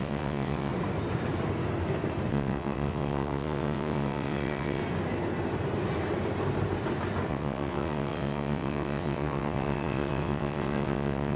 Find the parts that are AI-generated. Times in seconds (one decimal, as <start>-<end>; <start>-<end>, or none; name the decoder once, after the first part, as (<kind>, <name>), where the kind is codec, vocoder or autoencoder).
0.0-0.7 (vocoder, WaveNeXt); 2.3-4.8; 7.3-11.4